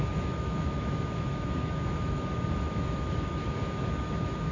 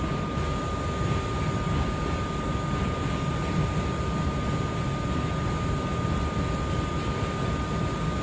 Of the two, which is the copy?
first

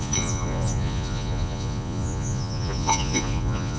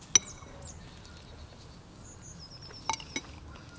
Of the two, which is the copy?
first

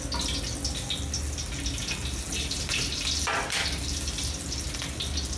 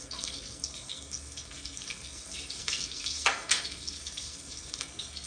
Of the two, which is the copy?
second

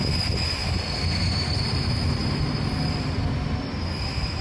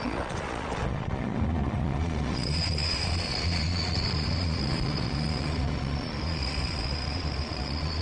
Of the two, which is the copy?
second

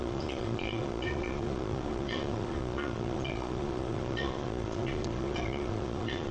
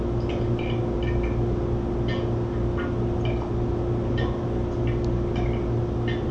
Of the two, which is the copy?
first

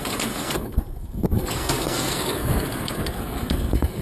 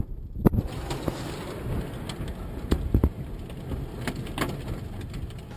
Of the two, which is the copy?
first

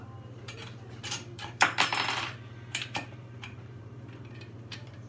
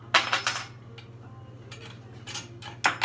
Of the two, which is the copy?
first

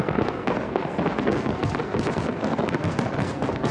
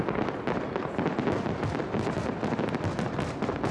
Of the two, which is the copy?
first